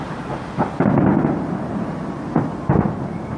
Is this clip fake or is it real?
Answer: real